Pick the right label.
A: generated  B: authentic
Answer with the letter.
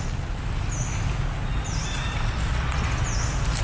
B